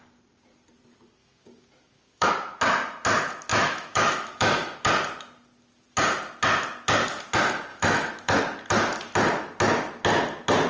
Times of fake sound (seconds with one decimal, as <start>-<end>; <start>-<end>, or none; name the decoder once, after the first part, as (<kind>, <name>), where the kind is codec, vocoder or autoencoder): 1.2-2.3 (autoencoder, DAC-VAE); 3.5-4.9; 7.7-8.4